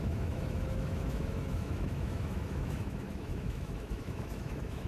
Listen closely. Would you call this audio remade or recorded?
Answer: remade